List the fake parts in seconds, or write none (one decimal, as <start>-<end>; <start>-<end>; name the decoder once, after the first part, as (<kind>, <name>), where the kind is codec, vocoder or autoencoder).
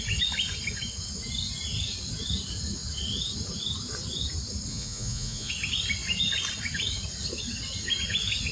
4.7-5.5 (vocoder, Vocos)